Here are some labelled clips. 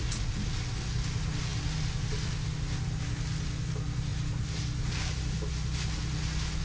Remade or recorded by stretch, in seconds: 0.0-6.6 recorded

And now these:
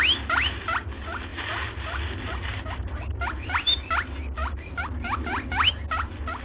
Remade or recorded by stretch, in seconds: 0.0-6.4 recorded

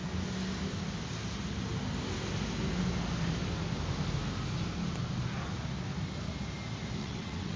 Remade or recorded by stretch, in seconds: 0.0-7.0 recorded; 7.0-7.6 remade

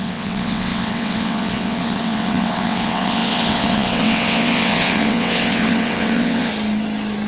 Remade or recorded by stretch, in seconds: 0.0-6.5 remade; 6.5-7.3 recorded

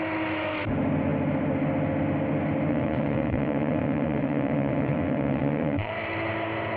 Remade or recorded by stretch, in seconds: 0.0-2.7 recorded; 2.7-5.9 remade; 5.9-6.8 recorded

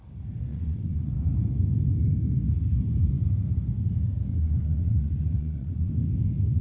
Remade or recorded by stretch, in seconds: 0.0-0.5 recorded; 0.5-1.1 remade; 1.1-4.3 recorded; 4.3-5.9 remade; 5.9-6.6 recorded